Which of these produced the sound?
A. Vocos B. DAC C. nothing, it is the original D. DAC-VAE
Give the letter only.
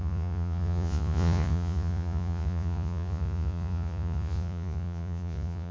A